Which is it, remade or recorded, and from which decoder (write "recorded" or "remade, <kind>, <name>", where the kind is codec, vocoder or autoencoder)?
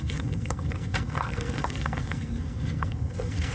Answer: remade, codec, SNAC